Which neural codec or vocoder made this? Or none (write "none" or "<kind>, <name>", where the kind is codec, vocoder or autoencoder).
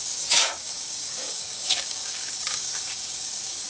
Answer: codec, DAC